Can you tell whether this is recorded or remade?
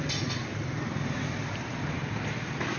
recorded